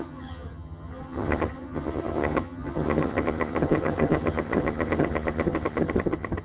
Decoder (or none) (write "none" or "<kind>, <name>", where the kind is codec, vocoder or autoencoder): vocoder, HiFi-GAN